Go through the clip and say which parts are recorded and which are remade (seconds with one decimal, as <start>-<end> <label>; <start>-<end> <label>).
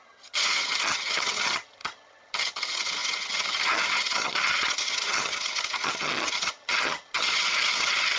0.0-8.2 remade